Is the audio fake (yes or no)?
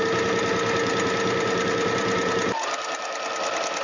no